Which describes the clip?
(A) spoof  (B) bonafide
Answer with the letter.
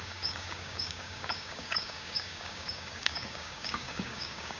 A